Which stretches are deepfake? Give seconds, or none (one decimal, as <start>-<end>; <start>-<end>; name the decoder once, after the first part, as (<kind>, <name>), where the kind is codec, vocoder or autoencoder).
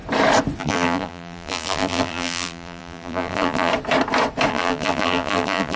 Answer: 0.6-3.7 (vocoder, BigVGAN v2); 4.5-5.8